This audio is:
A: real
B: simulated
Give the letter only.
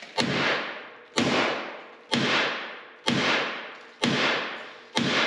A